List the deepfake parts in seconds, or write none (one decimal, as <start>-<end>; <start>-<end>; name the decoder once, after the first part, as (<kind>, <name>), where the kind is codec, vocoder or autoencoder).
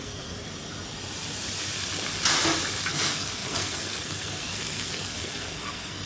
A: 0.0-0.5 (codec, SNAC); 2.9-6.1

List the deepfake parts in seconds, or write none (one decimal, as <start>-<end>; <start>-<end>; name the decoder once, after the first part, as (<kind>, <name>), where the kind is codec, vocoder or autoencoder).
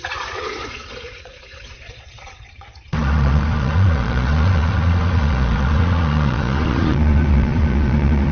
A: 0.0-8.3 (vocoder, Vocos)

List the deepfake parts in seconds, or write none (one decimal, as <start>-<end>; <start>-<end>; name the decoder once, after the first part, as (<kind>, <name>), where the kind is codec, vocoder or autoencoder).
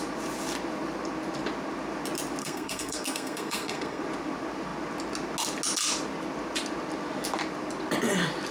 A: 2.4-4.0 (codec, SNAC)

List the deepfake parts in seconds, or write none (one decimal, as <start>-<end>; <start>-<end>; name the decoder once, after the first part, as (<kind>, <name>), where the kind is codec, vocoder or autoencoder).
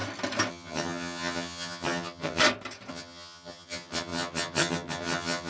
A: 0.5-2.4 (vocoder, HiFi-GAN); 2.9-5.5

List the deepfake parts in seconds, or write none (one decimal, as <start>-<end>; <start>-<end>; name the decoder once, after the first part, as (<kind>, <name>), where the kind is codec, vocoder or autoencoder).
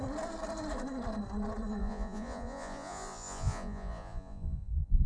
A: 1.8-5.1 (vocoder, Vocos)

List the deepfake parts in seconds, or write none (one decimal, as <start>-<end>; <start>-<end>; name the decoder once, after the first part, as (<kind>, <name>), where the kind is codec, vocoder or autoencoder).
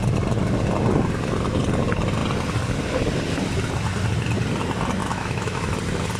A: 5.0-5.7 (autoencoder, DAC-VAE)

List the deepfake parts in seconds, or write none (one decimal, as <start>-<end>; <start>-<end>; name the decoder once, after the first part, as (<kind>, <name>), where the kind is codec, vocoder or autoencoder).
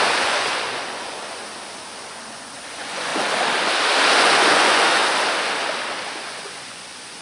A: 0.0-1.4 (vocoder, Vocos); 1.9-3.1; 4.2-5.0; 6.2-7.2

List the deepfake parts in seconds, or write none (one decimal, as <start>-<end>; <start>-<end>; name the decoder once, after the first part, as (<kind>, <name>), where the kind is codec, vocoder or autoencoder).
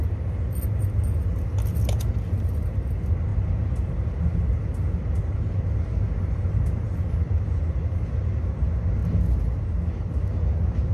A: none